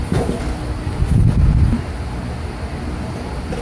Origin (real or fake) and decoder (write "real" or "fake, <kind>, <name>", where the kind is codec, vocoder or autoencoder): real